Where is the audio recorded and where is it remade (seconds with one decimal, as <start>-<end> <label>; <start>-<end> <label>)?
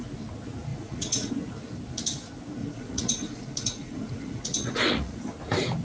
0.0-0.7 recorded; 0.7-1.3 remade; 1.3-2.6 recorded; 2.6-5.2 remade; 5.2-5.8 recorded